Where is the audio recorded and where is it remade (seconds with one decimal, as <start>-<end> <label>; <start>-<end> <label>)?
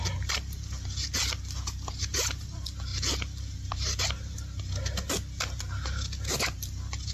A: 0.0-7.1 recorded